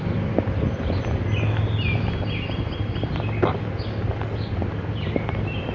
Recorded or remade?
recorded